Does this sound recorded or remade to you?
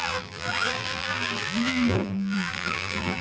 remade